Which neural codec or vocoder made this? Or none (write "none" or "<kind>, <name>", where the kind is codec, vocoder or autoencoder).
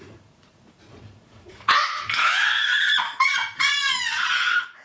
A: vocoder, Vocos